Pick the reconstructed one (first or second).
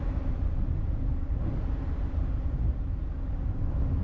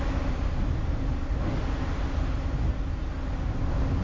first